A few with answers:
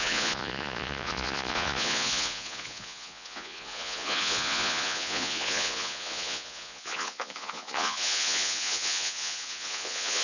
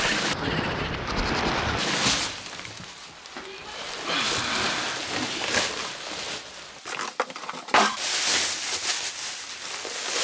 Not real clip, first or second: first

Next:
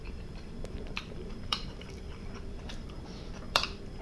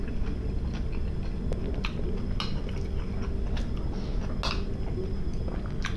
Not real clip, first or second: first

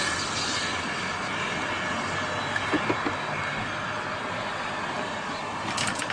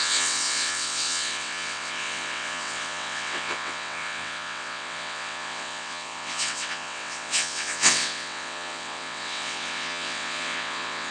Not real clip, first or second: second